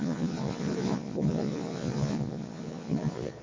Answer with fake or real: fake